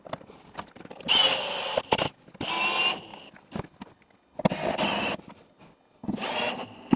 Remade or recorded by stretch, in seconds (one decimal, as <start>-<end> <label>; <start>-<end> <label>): 0.0-7.0 recorded